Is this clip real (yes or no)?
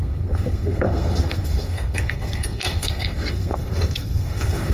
no